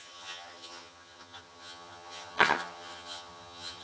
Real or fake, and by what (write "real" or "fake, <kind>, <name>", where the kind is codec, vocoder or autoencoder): fake, vocoder, HiFi-GAN